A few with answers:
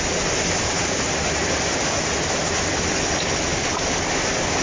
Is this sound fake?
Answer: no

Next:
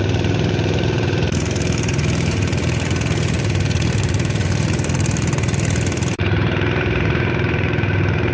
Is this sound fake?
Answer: yes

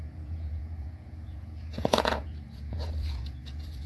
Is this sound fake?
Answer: yes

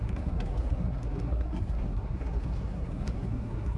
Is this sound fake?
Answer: yes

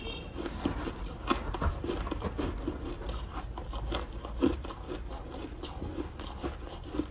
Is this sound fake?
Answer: no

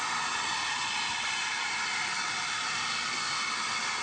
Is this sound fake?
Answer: no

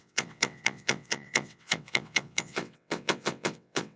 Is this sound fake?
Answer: yes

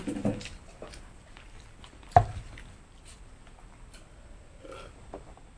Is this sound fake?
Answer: no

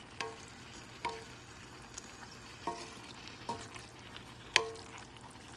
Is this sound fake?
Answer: no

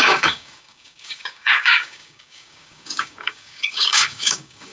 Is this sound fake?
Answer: yes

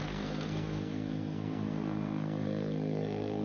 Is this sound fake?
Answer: yes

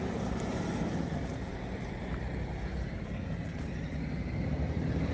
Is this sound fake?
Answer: yes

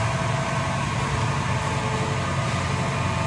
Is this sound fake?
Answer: no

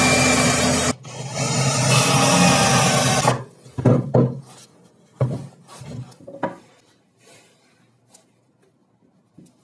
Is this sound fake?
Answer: no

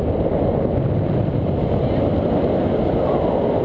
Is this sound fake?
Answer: no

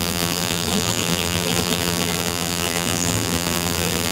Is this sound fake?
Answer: yes